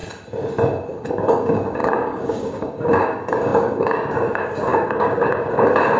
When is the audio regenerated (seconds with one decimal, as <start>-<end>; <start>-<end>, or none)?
1.1-6.0

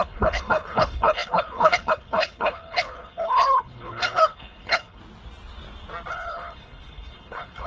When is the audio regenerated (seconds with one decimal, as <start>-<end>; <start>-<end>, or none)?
0.0-5.0; 6.1-7.7

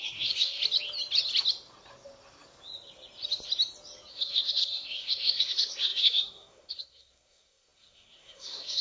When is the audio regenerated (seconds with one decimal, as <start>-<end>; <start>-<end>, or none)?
0.0-0.6; 4.1-8.8